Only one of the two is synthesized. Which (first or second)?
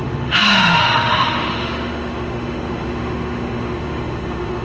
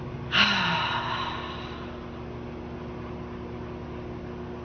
first